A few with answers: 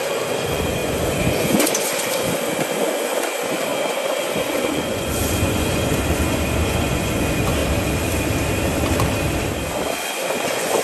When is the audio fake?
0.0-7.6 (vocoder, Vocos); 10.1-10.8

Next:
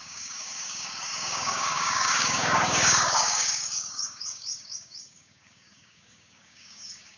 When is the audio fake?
0.0-7.2 (codec, DAC)